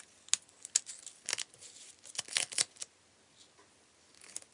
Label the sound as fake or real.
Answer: real